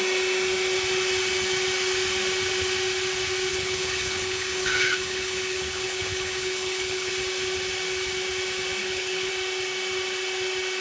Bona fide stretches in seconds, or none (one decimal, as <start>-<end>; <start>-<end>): 0.0-3.5; 7.1-8.8; 9.3-10.8